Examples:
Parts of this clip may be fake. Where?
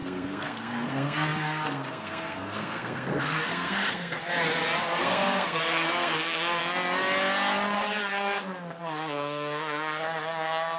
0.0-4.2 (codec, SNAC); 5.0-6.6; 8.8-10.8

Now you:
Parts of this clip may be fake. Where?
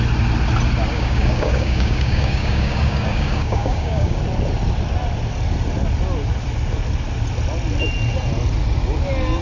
0.9-4.2 (codec, DAC)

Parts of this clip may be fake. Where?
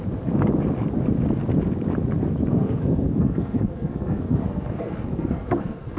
2.5-6.0 (codec, SNAC)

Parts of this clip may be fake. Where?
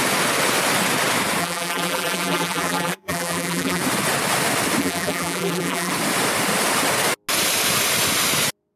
1.4-3.8 (vocoder, BigVGAN v2); 4.8-5.9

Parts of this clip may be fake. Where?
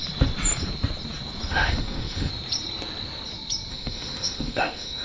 1.5-2.3 (autoencoder, DAC-VAE); 3.7-5.0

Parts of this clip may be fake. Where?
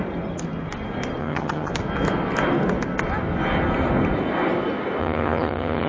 1.2-1.7 (vocoder, HiFi-GAN); 5.0-5.9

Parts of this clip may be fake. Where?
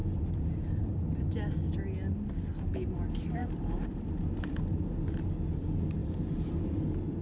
0.0-1.0 (vocoder, BigVGAN v2); 3.4-5.3; 6.0-6.5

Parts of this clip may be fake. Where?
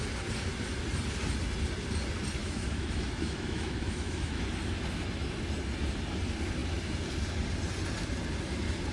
2.4-4.4 (autoencoder, DAC-VAE)